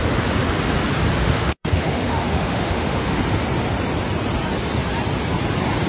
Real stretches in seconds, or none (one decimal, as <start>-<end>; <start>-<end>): 0.0-1.2; 3.2-5.9